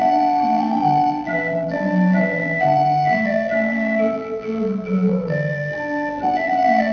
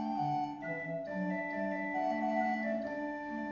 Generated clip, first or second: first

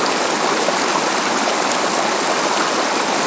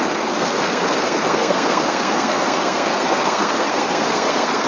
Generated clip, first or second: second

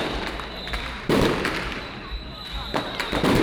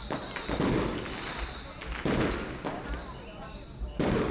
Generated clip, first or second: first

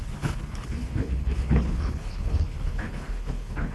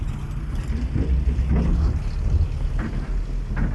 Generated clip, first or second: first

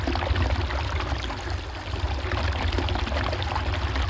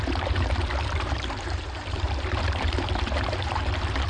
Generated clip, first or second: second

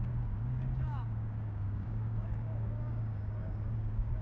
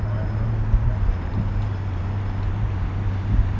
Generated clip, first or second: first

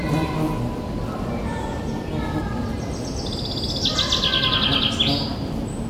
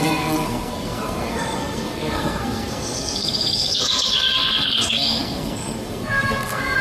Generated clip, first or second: second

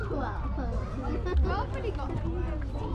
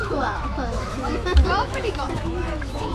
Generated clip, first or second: second